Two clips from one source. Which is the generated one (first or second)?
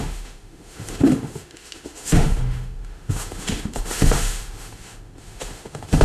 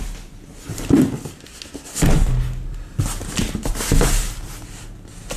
first